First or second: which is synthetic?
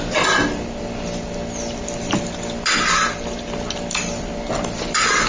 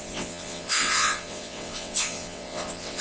second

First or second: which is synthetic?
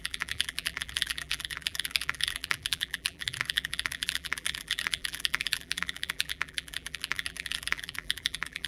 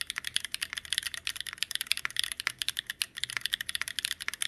first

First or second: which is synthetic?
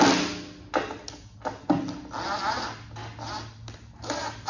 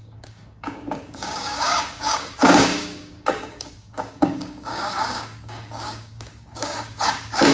second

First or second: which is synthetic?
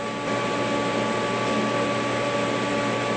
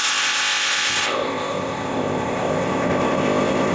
second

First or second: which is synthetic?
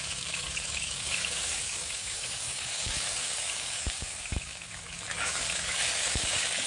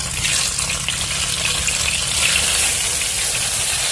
first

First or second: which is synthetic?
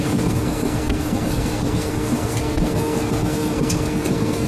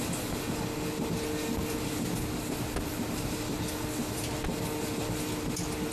first